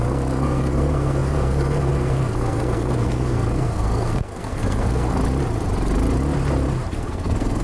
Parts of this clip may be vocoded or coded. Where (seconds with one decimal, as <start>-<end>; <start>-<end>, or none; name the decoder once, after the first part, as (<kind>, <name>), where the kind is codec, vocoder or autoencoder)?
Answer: 0.0-5.2 (codec, SNAC); 6.9-7.6